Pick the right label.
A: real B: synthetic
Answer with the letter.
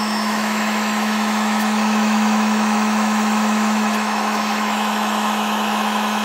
B